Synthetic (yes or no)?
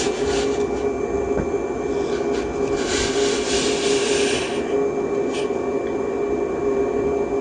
no